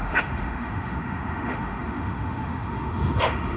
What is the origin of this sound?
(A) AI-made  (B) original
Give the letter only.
A